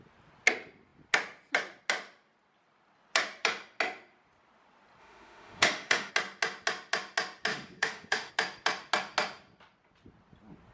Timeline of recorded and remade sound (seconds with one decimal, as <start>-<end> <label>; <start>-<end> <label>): 0.0-5.0 recorded; 5.0-6.1 remade; 6.1-7.5 recorded; 7.5-8.3 remade; 8.3-10.7 recorded